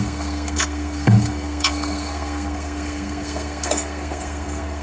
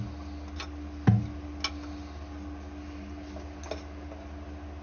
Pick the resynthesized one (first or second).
first